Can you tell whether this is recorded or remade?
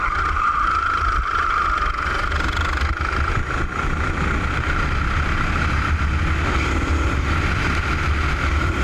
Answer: recorded